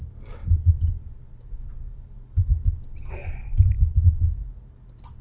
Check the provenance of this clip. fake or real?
real